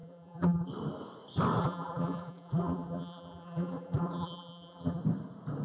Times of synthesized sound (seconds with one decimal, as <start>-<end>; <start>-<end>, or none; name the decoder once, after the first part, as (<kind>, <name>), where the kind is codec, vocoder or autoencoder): 0.0-0.7 (vocoder, BigVGAN v2); 1.6-5.0